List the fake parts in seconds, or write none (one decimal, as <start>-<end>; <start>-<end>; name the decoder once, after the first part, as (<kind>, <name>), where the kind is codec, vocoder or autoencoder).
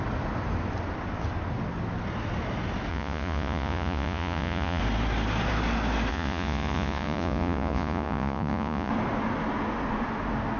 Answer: 2.9-4.8 (vocoder, Vocos); 6.1-8.9